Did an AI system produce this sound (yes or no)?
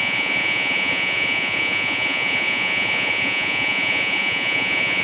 yes